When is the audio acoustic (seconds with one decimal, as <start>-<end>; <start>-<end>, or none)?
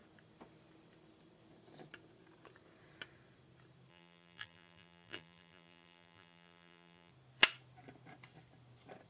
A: 0.0-3.9; 7.1-9.1